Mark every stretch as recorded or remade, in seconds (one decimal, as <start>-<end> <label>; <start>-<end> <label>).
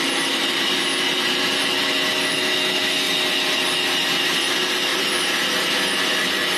0.0-4.9 recorded; 4.9-6.6 remade